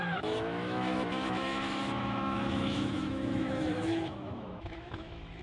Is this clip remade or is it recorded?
remade